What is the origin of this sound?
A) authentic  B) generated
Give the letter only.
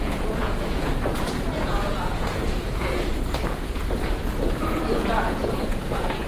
B